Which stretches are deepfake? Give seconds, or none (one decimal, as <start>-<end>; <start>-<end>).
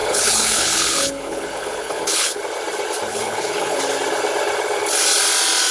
0.0-2.4; 3.1-3.8